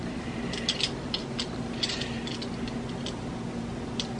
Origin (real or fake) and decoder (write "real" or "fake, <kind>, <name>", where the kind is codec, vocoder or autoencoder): real